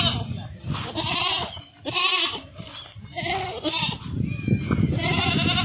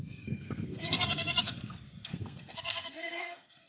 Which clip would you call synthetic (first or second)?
second